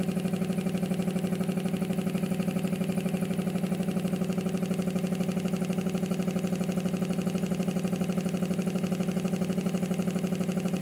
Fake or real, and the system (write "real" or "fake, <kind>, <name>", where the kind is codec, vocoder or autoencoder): real